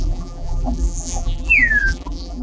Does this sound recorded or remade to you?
remade